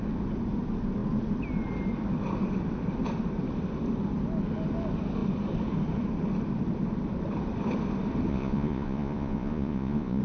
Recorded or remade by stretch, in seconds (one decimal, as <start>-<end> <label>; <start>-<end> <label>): 0.0-8.3 recorded; 8.3-10.2 remade